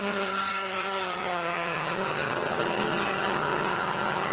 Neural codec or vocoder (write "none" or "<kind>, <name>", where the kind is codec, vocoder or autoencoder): vocoder, HiFi-GAN